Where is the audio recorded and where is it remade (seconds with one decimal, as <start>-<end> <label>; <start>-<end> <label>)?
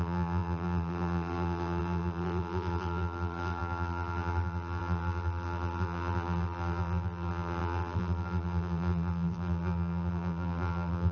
0.0-11.1 remade